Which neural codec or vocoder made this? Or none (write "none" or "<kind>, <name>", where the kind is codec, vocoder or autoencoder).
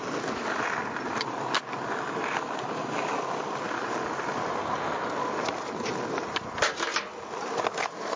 none